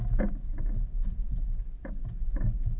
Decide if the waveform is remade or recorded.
remade